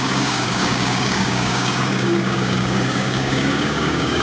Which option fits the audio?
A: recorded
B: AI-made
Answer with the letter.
B